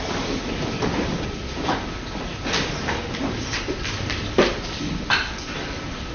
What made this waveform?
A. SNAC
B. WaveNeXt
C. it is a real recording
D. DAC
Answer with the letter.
C